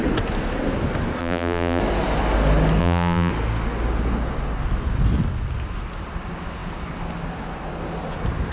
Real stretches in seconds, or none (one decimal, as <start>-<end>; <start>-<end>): 0.0-1.2; 1.8-2.8; 3.3-8.5